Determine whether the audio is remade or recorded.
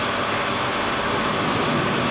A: recorded